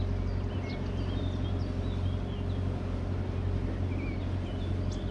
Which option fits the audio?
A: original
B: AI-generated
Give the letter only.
A